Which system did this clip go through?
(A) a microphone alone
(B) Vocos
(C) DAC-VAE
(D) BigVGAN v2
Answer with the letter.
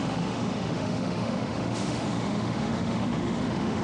C